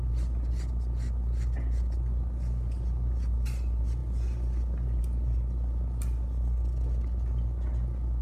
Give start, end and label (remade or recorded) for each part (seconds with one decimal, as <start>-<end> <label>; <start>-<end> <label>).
0.0-8.2 recorded